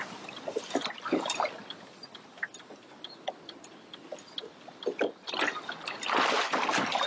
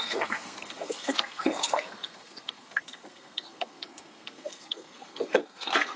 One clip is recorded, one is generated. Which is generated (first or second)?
second